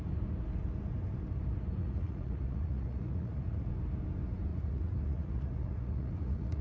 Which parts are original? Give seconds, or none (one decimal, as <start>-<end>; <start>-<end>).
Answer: 0.0-1.8; 3.7-4.5